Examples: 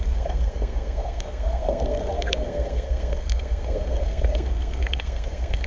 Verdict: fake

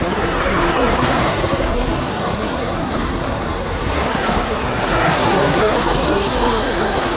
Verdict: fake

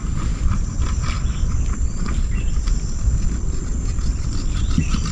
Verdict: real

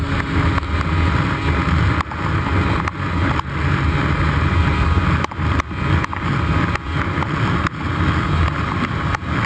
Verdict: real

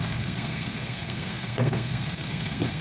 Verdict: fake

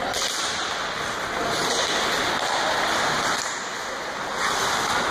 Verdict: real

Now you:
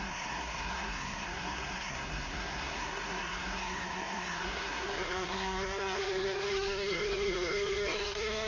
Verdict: fake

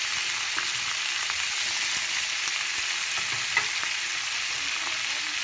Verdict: real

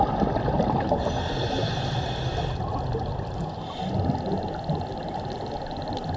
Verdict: real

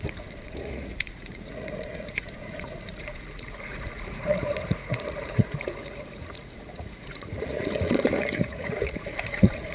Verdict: fake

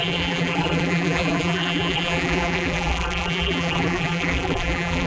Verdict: fake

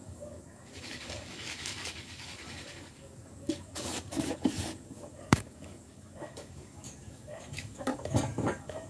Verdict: fake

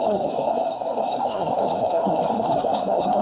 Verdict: fake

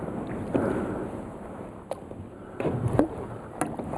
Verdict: real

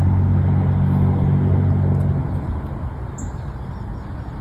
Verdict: real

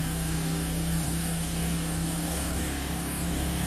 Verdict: fake